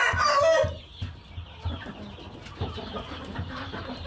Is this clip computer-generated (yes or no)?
yes